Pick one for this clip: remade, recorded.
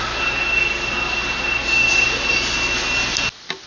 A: recorded